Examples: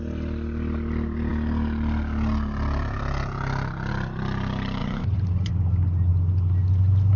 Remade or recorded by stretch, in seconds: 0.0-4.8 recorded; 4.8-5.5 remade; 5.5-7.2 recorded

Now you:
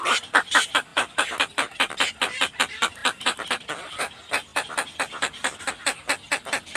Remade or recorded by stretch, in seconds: 0.0-0.9 recorded; 0.9-2.5 remade; 2.5-6.8 recorded

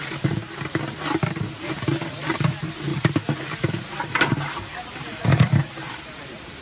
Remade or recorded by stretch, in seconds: 0.0-0.4 remade; 0.4-1.5 recorded; 1.5-6.6 remade

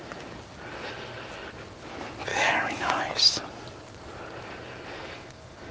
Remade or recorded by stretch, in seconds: 0.0-2.3 recorded; 2.3-3.0 remade; 3.0-5.0 recorded; 5.0-5.7 remade

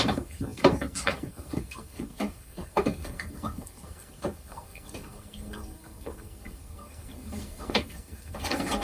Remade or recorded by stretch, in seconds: 0.0-8.8 remade

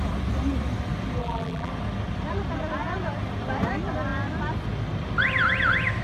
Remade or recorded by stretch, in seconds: 0.0-1.2 recorded; 1.2-1.7 remade; 1.7-6.0 recorded

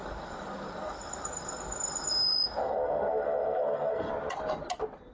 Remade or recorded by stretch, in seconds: 0.0-2.6 recorded; 2.6-4.1 remade; 4.1-5.1 recorded

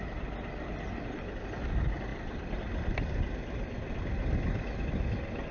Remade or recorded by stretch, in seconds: 0.0-2.1 recorded; 2.1-4.8 remade; 4.8-5.5 recorded